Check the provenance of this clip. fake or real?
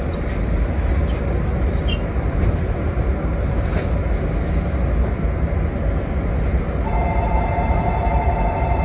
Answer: real